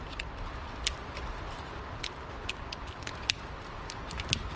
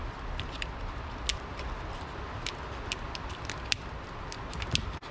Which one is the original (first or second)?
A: second